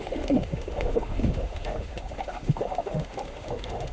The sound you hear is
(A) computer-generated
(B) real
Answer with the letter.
A